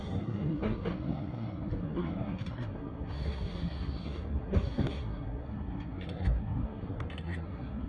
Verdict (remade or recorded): remade